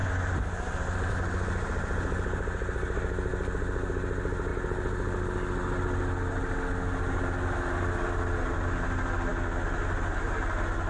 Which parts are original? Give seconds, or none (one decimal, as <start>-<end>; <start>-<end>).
0.0-10.9